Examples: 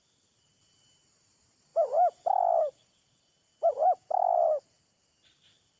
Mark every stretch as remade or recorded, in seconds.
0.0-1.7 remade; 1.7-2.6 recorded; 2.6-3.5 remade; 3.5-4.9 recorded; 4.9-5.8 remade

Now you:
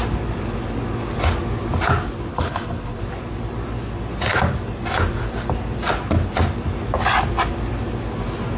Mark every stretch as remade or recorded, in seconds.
0.0-2.3 recorded; 2.3-3.0 remade; 3.0-8.6 recorded